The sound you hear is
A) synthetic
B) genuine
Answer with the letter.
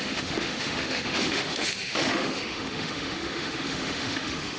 A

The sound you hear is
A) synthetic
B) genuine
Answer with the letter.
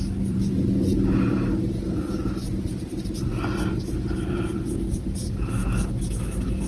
B